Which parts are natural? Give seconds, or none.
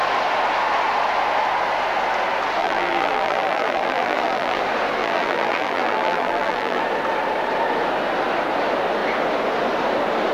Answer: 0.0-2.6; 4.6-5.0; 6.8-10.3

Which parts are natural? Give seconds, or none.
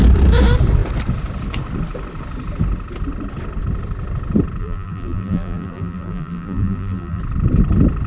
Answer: 0.0-4.6; 7.2-8.1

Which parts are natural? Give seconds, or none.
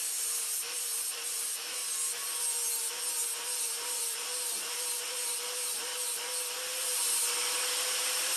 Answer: 1.8-3.6; 5.9-7.5